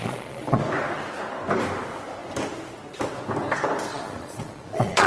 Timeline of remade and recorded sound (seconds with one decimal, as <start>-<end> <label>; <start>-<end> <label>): 0.0-0.6 remade; 0.6-3.9 recorded; 3.9-5.1 remade